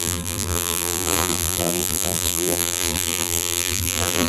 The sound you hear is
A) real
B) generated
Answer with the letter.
B